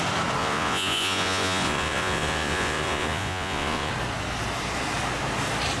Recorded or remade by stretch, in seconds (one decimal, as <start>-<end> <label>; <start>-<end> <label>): 0.0-0.4 recorded; 0.4-3.9 remade; 3.9-5.8 recorded